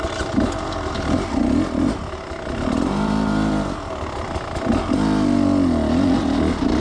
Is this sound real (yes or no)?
yes